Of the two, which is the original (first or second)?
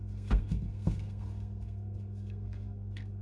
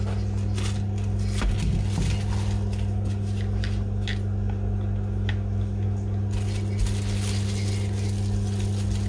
second